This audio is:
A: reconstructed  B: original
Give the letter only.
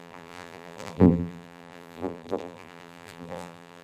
A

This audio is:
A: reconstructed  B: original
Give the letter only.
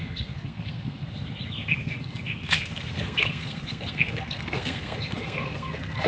A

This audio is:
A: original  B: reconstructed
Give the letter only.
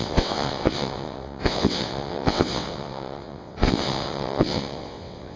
B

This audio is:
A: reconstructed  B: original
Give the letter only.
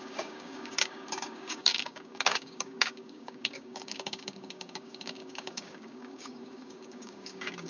A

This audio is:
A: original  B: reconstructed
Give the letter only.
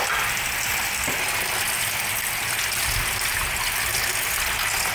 A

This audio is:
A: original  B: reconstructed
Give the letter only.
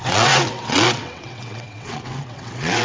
B